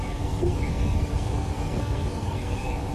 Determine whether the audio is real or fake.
fake